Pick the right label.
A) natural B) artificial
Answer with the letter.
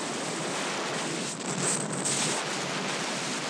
A